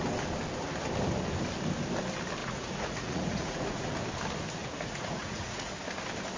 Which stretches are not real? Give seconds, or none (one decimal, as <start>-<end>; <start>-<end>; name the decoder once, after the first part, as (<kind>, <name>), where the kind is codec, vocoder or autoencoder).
2.4-3.8 (vocoder, Vocos); 4.6-5.8